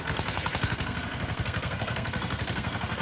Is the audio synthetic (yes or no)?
yes